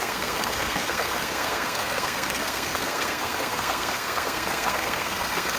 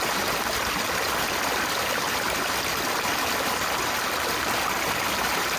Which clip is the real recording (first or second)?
second